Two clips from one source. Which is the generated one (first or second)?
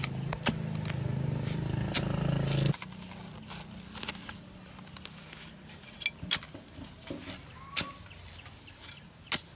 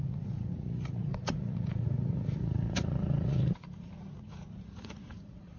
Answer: second